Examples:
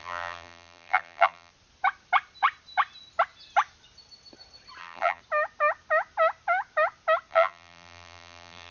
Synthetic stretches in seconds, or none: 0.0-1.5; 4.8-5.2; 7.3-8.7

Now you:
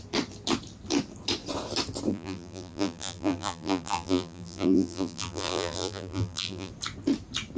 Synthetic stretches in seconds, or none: 2.1-6.7

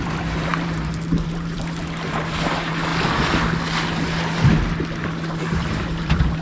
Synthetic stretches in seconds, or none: 0.0-2.9; 5.4-6.4

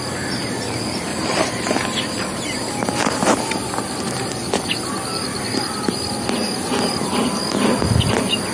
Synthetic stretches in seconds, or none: 1.1-1.7; 6.4-7.0

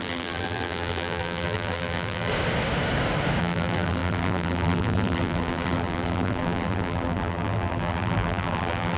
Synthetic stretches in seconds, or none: 0.0-2.3; 3.4-9.0

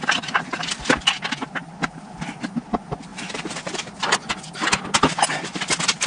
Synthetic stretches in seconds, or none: 3.1-3.7